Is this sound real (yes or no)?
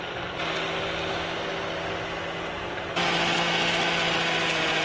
yes